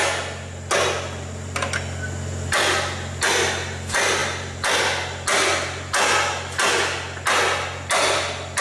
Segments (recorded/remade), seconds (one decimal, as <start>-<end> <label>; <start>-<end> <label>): 0.0-4.2 recorded; 4.2-4.8 remade; 4.8-8.6 recorded